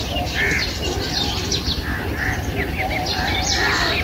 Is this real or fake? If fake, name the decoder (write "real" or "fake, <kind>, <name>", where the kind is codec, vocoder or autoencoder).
real